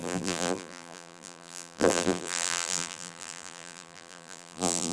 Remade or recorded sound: remade